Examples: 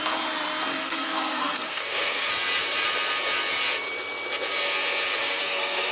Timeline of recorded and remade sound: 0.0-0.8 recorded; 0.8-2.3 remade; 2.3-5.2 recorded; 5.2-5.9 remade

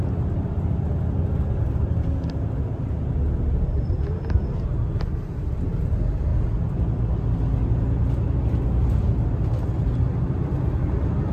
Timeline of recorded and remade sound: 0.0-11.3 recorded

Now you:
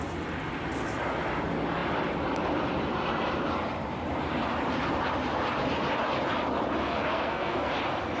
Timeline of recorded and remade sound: 0.0-6.8 recorded; 6.8-7.7 remade; 7.7-8.2 recorded